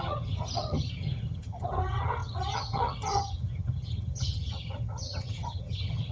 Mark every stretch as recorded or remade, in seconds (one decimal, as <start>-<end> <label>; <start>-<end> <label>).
0.0-6.1 remade

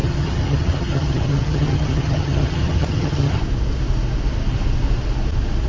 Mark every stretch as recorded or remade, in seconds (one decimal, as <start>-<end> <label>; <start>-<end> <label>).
0.0-3.4 remade; 3.4-5.7 recorded

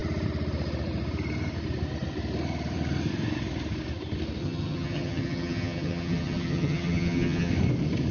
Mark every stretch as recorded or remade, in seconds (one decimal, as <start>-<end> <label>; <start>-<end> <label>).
0.0-4.4 recorded; 4.4-7.5 remade; 7.5-8.1 recorded

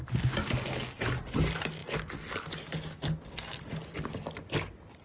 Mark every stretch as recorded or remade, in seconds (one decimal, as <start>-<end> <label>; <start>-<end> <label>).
0.0-5.0 recorded